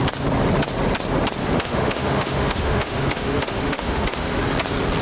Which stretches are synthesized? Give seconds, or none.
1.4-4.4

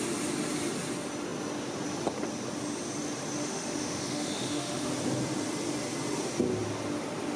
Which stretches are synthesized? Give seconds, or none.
3.4-4.9

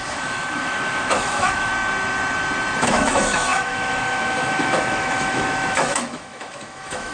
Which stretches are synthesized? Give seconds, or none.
0.0-1.7; 2.8-7.1

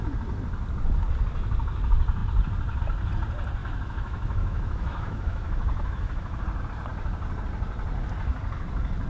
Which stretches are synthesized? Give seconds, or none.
3.6-6.4

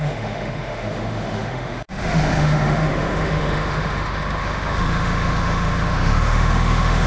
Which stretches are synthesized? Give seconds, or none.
0.0-7.1

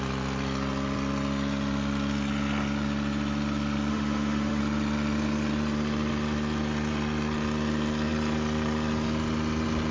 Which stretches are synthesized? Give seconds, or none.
3.9-4.6